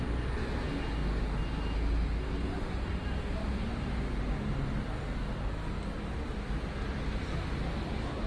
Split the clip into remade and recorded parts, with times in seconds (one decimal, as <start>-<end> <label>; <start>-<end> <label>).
0.0-8.3 recorded